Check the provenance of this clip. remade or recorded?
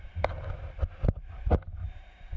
recorded